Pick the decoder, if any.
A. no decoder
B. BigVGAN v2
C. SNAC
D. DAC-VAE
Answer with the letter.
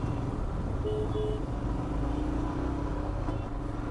A